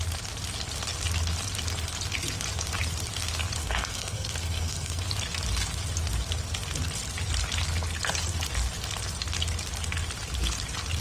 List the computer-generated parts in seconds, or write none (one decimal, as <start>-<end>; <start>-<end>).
3.6-5.0